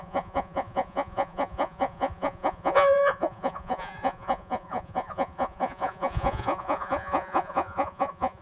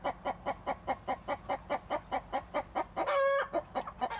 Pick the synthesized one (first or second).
first